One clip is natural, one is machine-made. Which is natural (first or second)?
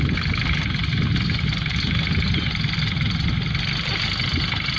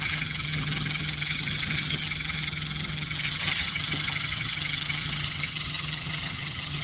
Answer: first